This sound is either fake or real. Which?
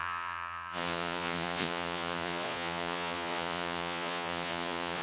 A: fake